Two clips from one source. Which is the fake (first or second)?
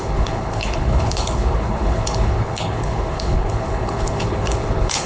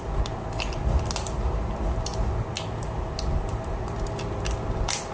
first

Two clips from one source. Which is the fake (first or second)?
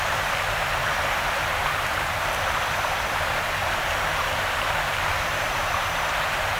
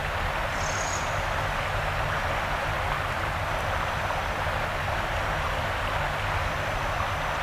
first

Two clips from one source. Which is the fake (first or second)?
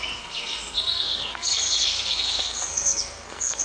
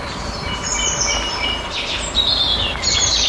first